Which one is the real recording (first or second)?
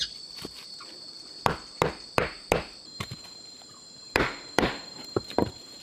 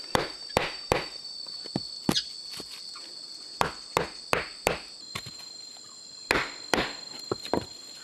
second